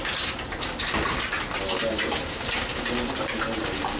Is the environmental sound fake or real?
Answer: real